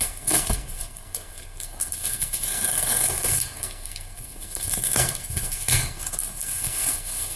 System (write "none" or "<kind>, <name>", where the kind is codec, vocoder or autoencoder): codec, SNAC